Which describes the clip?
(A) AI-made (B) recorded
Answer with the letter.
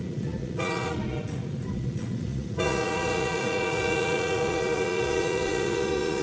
A